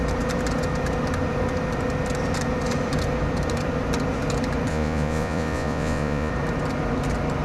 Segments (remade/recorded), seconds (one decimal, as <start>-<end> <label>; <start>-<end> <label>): 0.0-4.7 recorded; 4.7-6.3 remade; 6.3-7.4 recorded